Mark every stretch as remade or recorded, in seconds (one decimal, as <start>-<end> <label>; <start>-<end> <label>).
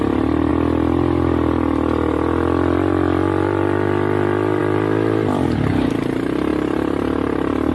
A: 0.0-0.5 remade; 0.5-4.6 recorded; 4.6-7.7 remade